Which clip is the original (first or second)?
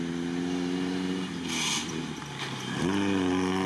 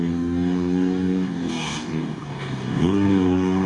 first